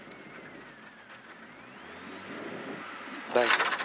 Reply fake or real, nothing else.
real